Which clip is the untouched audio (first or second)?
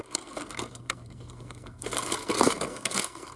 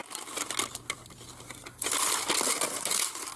second